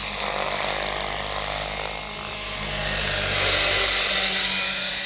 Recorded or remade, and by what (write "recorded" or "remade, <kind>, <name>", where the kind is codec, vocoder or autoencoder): recorded